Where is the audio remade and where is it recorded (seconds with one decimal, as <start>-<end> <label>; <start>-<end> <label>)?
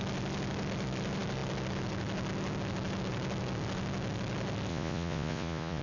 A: 0.0-4.7 recorded; 4.7-5.8 remade